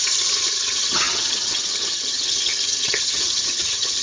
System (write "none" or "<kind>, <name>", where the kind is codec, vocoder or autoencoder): vocoder, HiFi-GAN